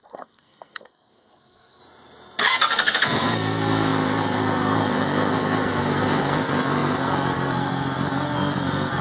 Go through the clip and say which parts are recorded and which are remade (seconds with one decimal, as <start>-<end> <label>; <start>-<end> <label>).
0.0-1.8 remade; 1.8-2.4 recorded; 2.4-9.0 remade